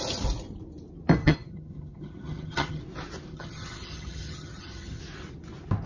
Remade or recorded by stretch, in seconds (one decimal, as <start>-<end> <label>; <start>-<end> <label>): 0.0-1.2 recorded; 1.2-2.8 remade; 2.8-3.3 recorded; 3.3-5.0 remade; 5.0-5.9 recorded